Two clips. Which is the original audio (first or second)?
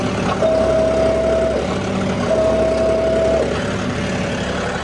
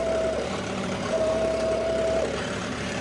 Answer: first